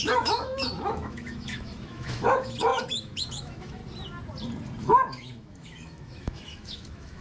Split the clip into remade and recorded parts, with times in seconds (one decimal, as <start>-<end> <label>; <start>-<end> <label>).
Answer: 0.0-3.8 remade; 3.8-4.8 recorded; 4.8-7.2 remade

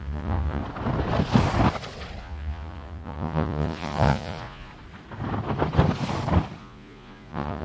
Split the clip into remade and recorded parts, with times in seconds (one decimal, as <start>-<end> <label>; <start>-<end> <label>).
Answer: 0.0-0.6 remade; 0.6-2.2 recorded; 2.2-4.7 remade; 4.7-6.6 recorded; 6.6-7.6 remade

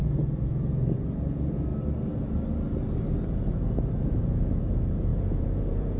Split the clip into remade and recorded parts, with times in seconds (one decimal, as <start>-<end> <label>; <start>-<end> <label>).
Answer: 0.0-1.7 remade; 1.7-4.0 recorded; 4.0-6.0 remade